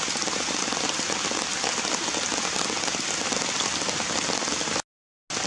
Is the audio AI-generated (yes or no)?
no